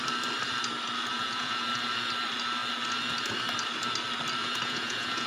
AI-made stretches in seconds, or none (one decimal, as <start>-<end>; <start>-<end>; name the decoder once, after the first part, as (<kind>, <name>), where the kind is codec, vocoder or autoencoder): 1.1-1.7 (vocoder, Vocos); 4.4-5.3